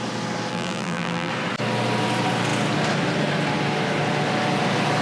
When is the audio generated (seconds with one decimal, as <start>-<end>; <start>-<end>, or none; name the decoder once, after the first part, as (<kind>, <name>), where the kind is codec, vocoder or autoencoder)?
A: 0.5-1.3 (vocoder, BigVGAN v2)